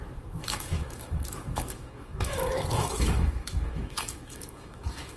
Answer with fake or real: fake